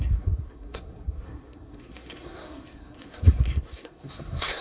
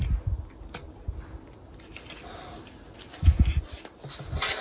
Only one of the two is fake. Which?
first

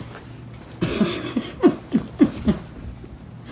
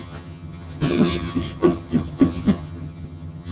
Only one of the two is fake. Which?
second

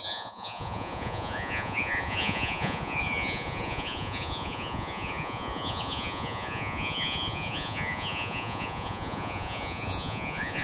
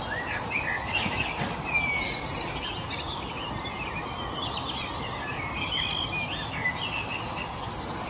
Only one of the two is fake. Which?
first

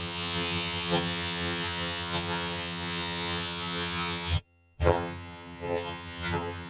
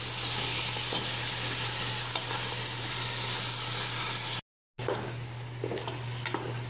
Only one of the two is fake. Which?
first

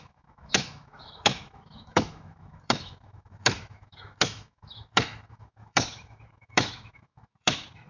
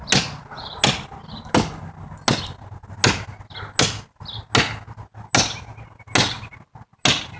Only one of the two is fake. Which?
first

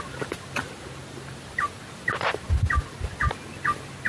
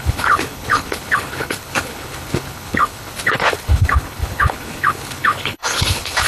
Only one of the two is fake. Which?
second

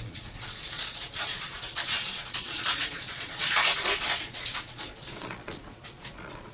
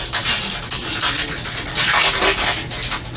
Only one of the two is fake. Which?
first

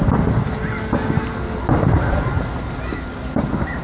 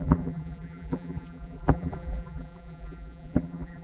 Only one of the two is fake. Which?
second